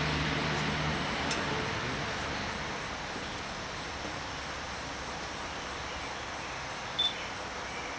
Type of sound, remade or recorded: recorded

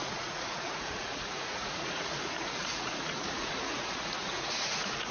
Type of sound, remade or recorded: remade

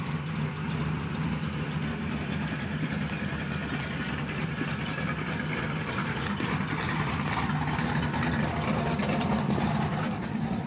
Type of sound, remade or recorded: recorded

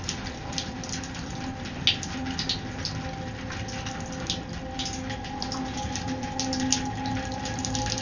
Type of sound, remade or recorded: recorded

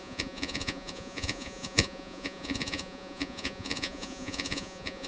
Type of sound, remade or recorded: remade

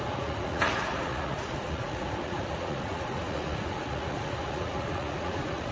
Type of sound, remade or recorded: remade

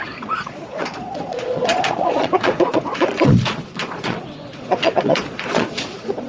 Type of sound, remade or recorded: remade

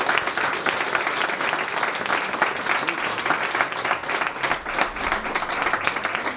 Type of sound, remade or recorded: recorded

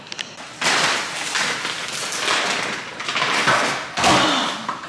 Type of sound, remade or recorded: recorded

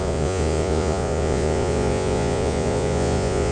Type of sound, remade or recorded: remade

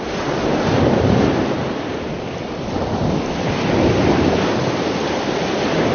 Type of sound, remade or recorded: recorded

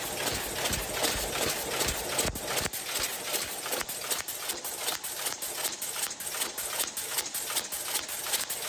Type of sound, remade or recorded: recorded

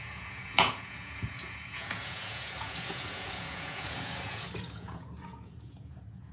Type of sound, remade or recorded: remade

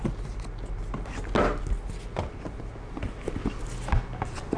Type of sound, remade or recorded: recorded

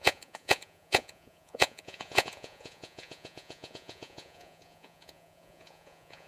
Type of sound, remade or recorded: remade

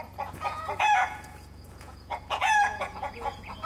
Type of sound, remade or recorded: remade